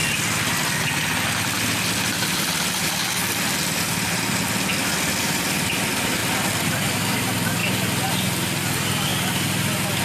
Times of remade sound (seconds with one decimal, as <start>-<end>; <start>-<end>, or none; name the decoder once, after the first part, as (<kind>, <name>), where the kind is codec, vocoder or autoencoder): none